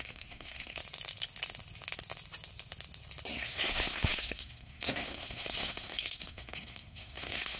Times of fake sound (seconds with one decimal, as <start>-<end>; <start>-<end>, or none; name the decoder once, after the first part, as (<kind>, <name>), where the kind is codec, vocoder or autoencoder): 0.0-0.8 (codec, SNAC); 3.3-7.6